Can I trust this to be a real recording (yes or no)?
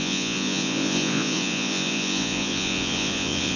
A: no